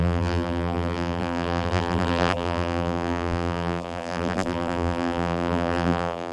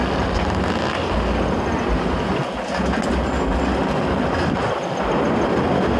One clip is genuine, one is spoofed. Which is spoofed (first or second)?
first